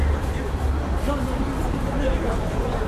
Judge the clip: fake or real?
real